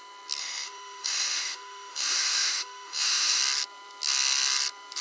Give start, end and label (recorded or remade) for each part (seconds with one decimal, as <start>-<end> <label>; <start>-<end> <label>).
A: 0.0-0.4 recorded; 0.4-3.4 remade; 3.4-5.0 recorded